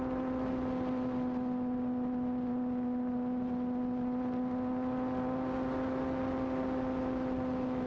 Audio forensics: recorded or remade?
recorded